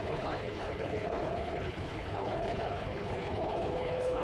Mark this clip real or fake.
fake